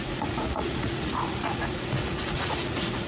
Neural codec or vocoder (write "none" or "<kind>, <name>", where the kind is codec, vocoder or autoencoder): vocoder, Vocos